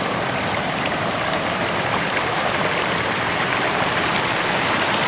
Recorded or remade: remade